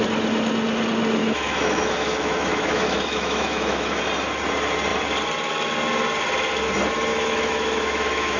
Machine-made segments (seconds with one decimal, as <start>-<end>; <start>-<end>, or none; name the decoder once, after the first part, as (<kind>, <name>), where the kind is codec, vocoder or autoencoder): 1.2-4.0 (autoencoder, DAC-VAE); 7.1-8.4